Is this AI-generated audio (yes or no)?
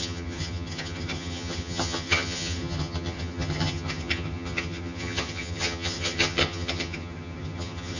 yes